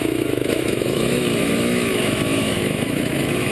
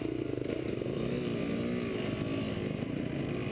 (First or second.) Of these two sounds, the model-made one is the first